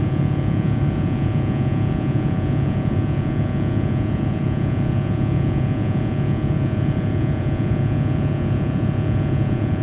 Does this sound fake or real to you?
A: fake